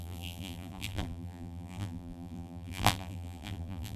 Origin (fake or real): fake